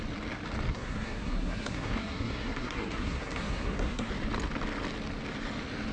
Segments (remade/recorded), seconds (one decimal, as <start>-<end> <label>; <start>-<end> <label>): 0.0-0.7 recorded; 0.7-4.1 remade; 4.1-5.9 recorded